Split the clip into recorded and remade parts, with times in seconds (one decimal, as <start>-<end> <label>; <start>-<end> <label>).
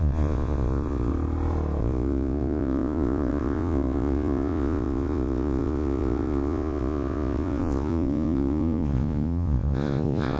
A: 0.0-1.1 remade; 1.1-1.8 recorded; 1.8-10.4 remade